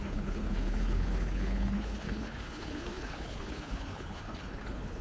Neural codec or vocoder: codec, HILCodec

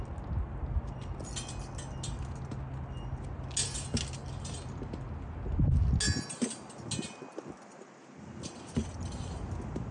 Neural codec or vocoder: none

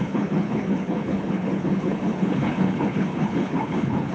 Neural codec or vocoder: codec, HILCodec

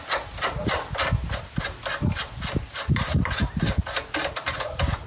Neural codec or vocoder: none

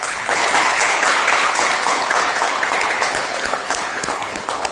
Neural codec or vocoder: codec, HILCodec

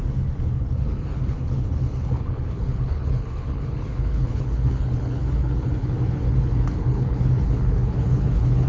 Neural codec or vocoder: codec, HILCodec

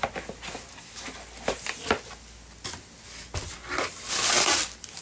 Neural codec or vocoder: none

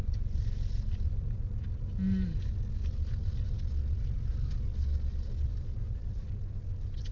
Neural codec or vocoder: none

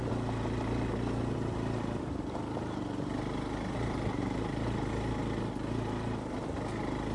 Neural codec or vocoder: none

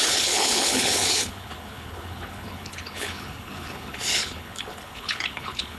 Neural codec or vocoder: codec, HILCodec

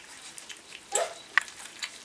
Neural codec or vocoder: none